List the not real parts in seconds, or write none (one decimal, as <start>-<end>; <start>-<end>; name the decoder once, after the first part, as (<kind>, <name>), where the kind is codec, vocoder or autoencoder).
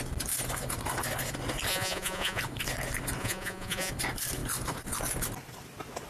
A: 1.7-2.4 (vocoder, Vocos); 3.2-3.9